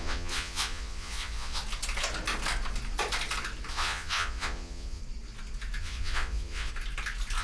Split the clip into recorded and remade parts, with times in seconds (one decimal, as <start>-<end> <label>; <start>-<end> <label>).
0.0-1.6 remade; 1.6-3.7 recorded; 3.7-5.0 remade; 5.0-5.8 recorded; 5.8-6.7 remade; 6.7-7.4 recorded